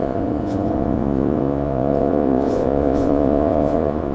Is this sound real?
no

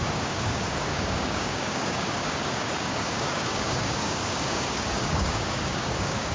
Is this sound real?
no